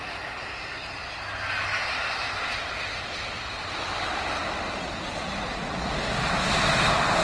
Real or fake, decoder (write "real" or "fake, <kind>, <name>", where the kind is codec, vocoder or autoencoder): real